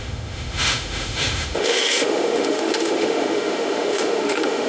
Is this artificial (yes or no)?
yes